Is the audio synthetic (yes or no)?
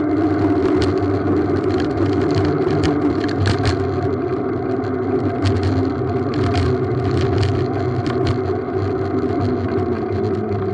no